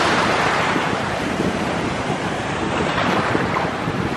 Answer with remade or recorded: remade